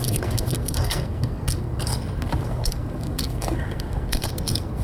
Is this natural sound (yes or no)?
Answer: no